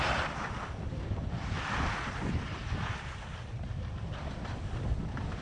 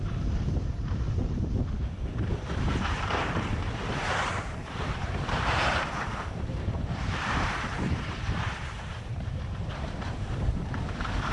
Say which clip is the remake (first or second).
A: second